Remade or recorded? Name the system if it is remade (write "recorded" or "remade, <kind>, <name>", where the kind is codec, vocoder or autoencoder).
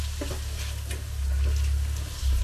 recorded